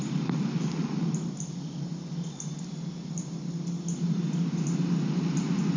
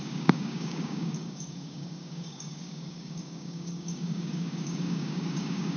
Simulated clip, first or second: second